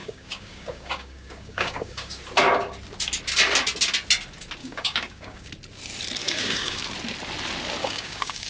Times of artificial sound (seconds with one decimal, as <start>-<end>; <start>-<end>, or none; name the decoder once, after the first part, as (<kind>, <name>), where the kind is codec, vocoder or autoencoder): 0.0-2.2 (codec, DAC); 4.6-5.5; 6.2-6.8; 7.8-8.5